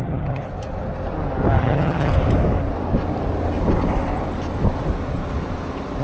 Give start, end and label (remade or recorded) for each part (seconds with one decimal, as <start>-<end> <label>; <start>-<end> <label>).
0.0-0.4 remade; 0.4-1.6 recorded; 1.6-2.1 remade; 2.1-6.0 recorded